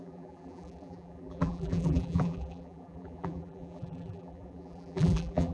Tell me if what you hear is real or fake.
fake